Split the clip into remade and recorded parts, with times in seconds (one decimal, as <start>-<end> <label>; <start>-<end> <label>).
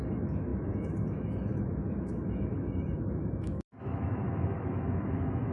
0.0-5.5 remade